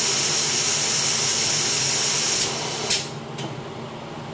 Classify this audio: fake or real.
real